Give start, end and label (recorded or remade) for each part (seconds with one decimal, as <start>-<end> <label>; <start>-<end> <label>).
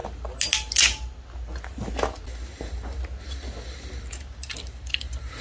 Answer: 0.0-5.4 recorded